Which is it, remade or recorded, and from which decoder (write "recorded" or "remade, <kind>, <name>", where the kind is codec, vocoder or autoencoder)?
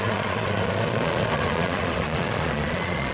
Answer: remade, vocoder, Vocos